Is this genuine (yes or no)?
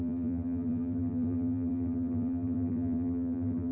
no